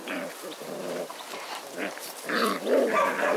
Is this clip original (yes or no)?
no